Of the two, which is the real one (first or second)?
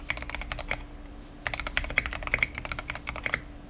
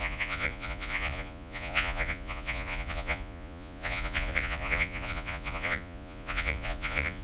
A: first